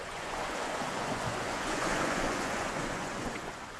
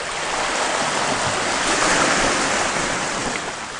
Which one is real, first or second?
second